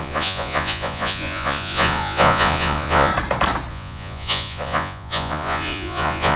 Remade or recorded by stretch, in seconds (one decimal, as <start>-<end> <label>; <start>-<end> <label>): 0.0-3.1 remade; 3.1-3.7 recorded; 3.7-6.4 remade